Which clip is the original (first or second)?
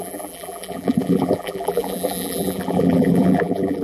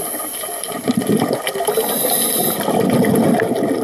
second